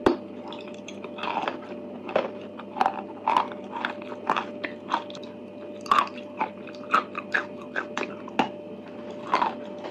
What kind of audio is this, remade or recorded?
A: recorded